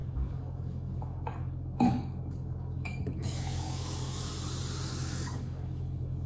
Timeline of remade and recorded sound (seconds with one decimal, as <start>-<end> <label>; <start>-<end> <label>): 0.0-4.3 remade; 4.3-4.9 recorded; 4.9-6.3 remade